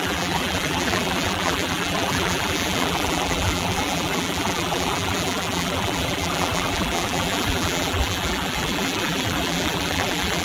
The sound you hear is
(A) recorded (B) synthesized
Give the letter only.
B